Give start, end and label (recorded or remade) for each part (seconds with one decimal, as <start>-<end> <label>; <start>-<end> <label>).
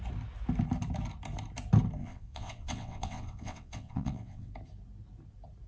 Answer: 0.0-2.0 recorded; 2.0-4.5 remade; 4.5-5.7 recorded